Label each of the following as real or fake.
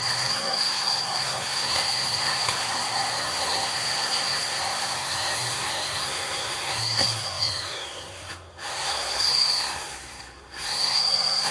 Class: fake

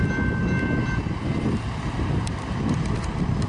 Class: real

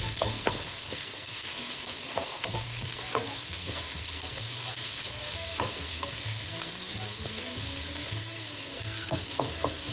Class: fake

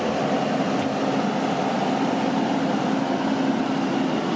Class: real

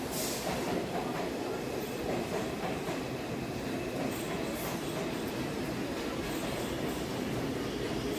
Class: real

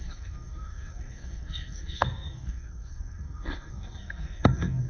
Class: fake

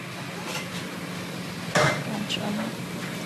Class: real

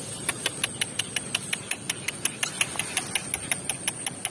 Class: real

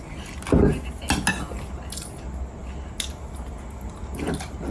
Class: real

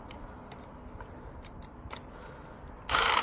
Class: real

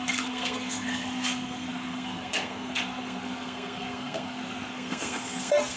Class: fake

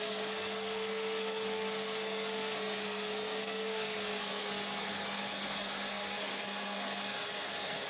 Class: fake